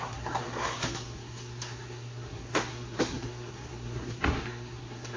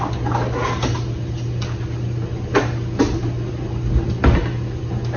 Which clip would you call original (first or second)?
second